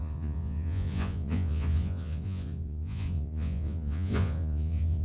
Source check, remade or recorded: remade